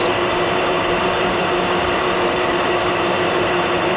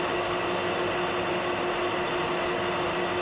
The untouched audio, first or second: second